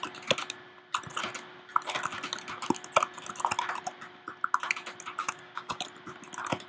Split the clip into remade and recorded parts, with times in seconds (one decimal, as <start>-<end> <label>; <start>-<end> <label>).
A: 0.0-5.2 recorded; 5.2-5.8 remade; 5.8-6.7 recorded